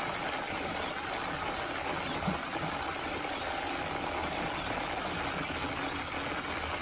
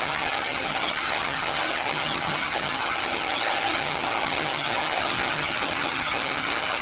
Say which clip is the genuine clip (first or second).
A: first